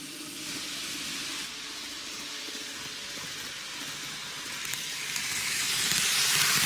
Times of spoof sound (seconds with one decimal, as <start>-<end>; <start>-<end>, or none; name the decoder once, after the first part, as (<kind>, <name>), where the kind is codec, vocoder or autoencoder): 1.9-2.8 (codec, DAC); 4.7-5.7